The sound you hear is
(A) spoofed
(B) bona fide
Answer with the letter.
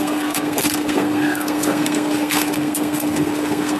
A